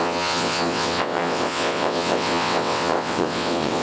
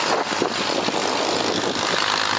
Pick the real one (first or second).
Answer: second